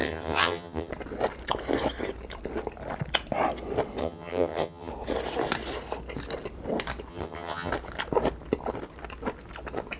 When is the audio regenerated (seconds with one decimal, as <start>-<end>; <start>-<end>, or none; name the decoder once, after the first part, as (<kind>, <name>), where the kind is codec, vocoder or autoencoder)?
0.0-0.9 (vocoder, HiFi-GAN); 4.0-4.9; 7.1-7.7